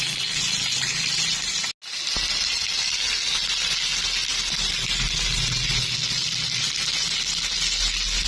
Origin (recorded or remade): recorded